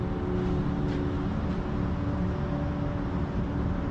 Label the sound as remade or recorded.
recorded